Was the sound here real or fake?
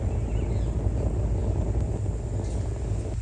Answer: real